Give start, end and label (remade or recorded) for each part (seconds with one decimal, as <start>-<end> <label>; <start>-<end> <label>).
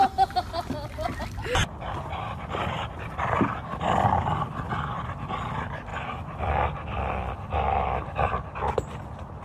0.0-3.7 recorded; 3.7-5.0 remade; 5.0-5.9 recorded; 5.9-6.5 remade; 6.5-9.4 recorded